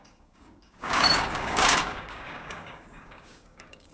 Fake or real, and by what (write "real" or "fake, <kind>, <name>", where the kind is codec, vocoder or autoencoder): fake, codec, DAC